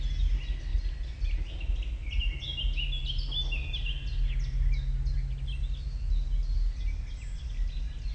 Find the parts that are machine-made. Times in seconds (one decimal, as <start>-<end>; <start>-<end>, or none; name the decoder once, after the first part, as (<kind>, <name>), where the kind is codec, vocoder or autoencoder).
none